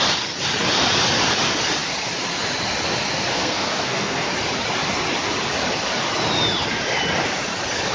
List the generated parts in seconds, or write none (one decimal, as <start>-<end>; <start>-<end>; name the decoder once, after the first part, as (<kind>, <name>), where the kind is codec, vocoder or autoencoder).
3.3-4.3 (codec, SNAC)